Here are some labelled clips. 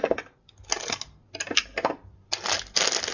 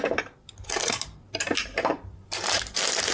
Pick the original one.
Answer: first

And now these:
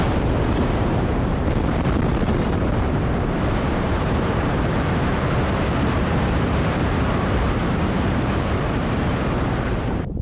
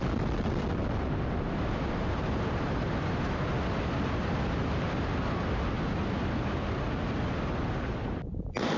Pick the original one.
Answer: second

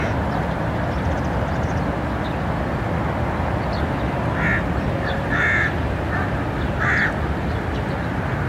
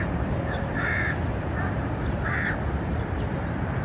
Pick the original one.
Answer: first